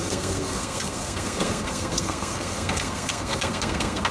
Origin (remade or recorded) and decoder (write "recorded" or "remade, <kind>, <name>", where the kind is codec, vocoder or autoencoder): remade, codec, SNAC